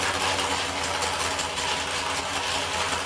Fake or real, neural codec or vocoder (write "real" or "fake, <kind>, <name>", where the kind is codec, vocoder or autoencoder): real